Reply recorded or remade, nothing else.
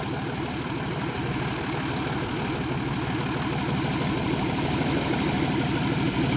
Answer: recorded